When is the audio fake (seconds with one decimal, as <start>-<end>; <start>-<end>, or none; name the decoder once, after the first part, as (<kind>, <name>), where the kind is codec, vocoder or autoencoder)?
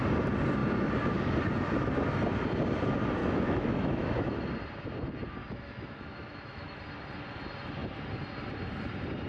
3.2-4.5 (autoencoder, DAC-VAE); 5.4-6.8